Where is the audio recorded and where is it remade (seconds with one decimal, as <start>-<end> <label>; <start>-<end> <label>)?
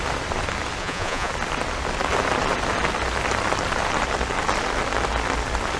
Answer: 0.0-0.8 recorded; 0.8-1.3 remade; 1.3-5.8 recorded